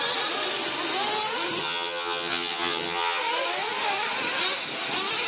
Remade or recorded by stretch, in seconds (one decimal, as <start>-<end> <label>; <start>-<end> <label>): 0.0-1.6 recorded; 1.6-3.2 remade; 3.2-5.3 recorded